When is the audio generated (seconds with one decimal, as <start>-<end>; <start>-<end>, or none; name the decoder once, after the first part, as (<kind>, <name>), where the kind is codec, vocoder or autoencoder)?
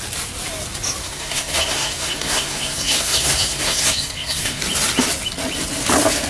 1.0-4.6 (codec, SNAC)